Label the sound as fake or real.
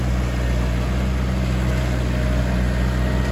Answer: real